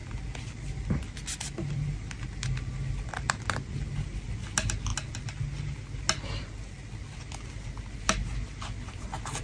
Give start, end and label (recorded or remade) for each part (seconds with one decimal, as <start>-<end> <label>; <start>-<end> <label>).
0.0-9.4 recorded